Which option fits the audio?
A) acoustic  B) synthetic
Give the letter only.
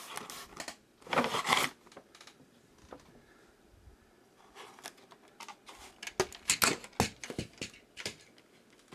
A